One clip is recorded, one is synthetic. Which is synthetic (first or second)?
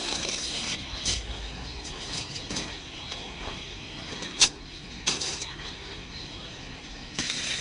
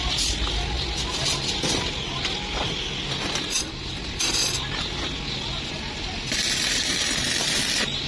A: first